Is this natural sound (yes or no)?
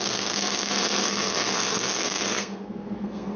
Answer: no